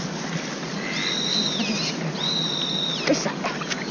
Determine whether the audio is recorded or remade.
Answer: recorded